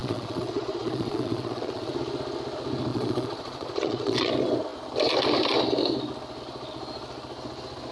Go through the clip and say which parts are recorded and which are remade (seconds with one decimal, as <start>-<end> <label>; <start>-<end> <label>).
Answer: 0.0-1.9 remade; 1.9-2.9 recorded; 2.9-4.3 remade; 4.3-7.9 recorded